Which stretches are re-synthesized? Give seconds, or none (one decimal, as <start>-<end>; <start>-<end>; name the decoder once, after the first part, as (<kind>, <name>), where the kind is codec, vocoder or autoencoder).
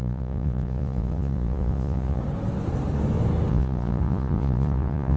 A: 0.0-2.2 (vocoder, Vocos); 3.5-5.2